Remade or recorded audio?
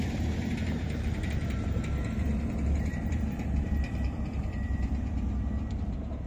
remade